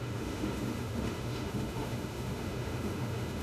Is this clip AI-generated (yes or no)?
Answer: yes